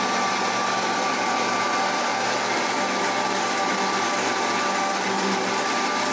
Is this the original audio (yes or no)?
yes